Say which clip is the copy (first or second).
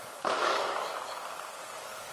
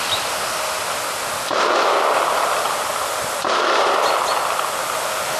first